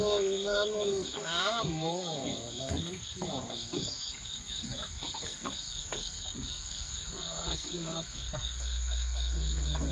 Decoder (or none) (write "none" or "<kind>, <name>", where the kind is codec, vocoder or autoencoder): codec, SNAC